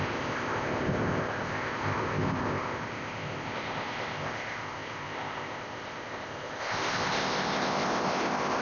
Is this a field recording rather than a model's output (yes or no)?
no